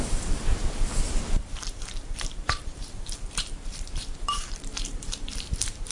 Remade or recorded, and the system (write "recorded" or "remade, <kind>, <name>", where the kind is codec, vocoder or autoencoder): remade, vocoder, BigVGAN v2